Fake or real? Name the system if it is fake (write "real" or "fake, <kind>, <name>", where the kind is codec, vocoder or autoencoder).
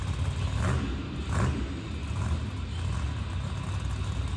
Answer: real